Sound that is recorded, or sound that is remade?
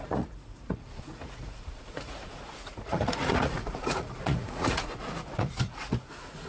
remade